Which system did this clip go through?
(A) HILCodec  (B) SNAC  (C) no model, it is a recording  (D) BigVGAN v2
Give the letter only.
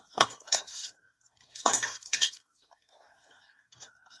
B